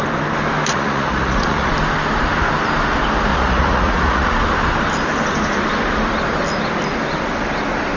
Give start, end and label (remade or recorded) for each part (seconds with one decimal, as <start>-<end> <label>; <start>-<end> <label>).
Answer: 0.0-0.7 recorded; 0.7-1.7 remade; 1.7-3.3 recorded; 3.3-4.3 remade; 4.3-8.0 recorded